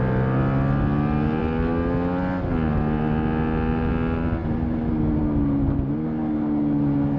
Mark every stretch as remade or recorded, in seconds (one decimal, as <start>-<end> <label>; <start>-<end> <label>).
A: 0.0-7.2 recorded